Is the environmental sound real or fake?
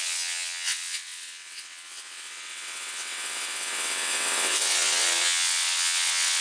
fake